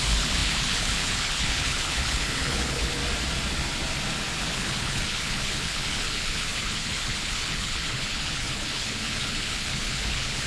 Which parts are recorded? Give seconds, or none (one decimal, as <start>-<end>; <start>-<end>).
3.0-4.4